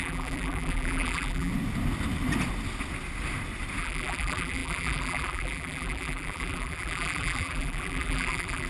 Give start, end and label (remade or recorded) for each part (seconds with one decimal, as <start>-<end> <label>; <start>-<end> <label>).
0.0-1.5 remade; 1.5-3.8 recorded; 3.8-8.7 remade